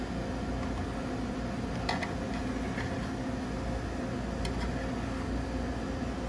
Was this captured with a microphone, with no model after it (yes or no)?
yes